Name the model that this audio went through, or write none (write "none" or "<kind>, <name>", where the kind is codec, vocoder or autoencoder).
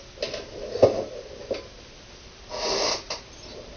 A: none